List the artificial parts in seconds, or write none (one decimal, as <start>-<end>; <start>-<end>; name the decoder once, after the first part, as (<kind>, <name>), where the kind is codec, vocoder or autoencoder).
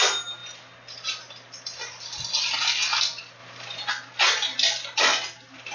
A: none